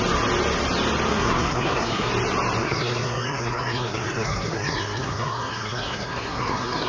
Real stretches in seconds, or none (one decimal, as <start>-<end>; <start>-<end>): 0.0-1.1; 2.1-2.6